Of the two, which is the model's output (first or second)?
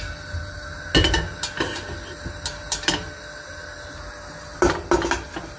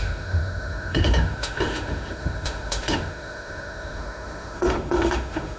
second